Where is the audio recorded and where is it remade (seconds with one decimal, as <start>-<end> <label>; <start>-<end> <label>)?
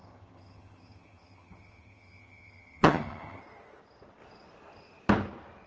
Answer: 0.0-3.4 remade; 3.4-5.7 recorded